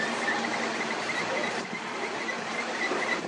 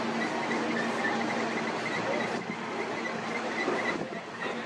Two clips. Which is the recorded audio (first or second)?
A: second